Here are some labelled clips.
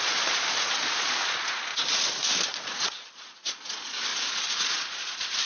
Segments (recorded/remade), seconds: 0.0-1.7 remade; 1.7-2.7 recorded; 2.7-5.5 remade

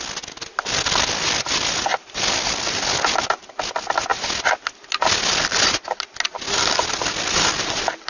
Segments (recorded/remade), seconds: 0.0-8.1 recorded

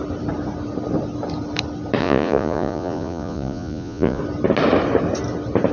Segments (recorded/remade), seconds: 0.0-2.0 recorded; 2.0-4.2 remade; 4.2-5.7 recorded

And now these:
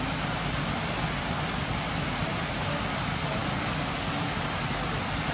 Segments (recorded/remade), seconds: 0.0-5.3 recorded

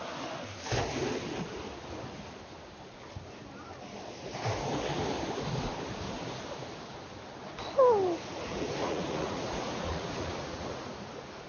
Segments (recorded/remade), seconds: 0.0-8.5 recorded; 8.5-11.5 remade

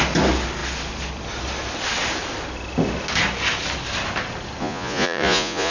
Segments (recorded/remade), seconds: 0.0-4.6 recorded; 4.6-5.7 remade